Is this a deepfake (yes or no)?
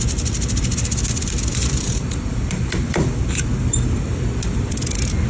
yes